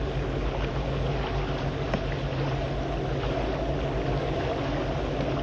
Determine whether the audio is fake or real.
real